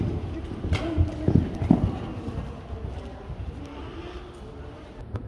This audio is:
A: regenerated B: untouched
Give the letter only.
B